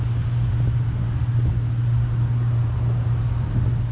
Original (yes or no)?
yes